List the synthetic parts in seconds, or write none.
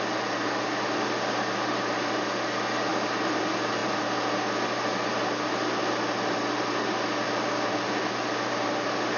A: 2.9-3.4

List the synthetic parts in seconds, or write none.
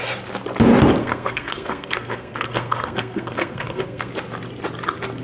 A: 1.0-4.1